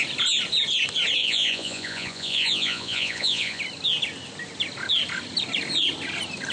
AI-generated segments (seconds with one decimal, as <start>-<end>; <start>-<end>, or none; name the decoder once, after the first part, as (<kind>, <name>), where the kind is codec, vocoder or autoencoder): 1.2-3.6 (vocoder, Vocos)